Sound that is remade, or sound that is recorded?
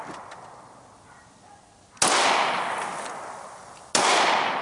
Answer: recorded